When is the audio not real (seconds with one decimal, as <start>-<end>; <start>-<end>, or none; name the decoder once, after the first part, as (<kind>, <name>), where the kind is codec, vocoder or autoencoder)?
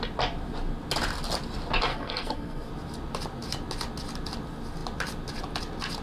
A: 1.9-2.7 (codec, SNAC)